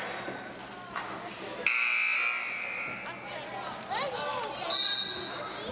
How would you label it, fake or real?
real